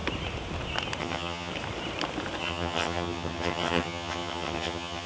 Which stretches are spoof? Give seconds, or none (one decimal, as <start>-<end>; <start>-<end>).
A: 1.0-1.5; 2.4-5.1